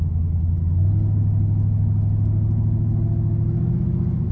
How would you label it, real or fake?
real